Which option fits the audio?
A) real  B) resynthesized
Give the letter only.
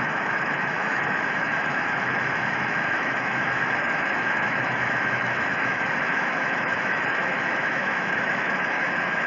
B